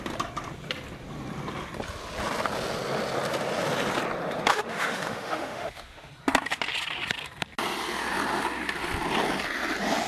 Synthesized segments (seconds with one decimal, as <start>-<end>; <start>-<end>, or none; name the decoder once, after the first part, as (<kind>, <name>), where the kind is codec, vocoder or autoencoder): 4.5-6.1 (autoencoder, DAC-VAE)